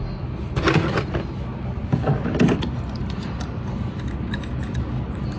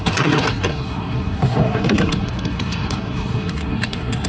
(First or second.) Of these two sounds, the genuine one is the first